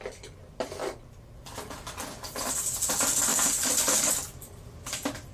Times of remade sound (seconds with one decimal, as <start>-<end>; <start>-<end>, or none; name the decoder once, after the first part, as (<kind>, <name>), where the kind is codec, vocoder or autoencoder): 3.3-4.1 (vocoder, BigVGAN v2)